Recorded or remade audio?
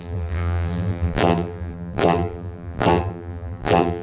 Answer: remade